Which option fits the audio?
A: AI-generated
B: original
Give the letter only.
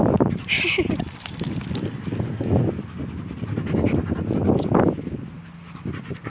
B